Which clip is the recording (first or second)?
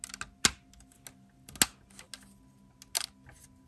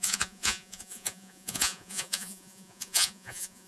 first